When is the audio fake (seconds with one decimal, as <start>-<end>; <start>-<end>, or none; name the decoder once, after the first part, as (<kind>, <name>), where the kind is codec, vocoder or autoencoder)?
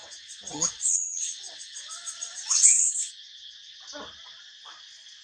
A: 0.0-3.1 (vocoder, WaveNeXt)